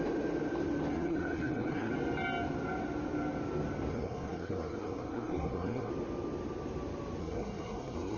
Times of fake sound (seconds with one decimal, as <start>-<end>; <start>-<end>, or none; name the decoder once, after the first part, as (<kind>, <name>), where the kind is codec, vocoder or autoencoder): 0.9-1.9 (codec, SNAC); 3.9-5.9; 7.2-8.2